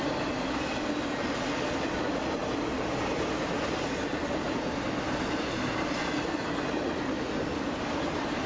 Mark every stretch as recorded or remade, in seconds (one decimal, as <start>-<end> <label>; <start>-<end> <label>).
0.0-8.5 recorded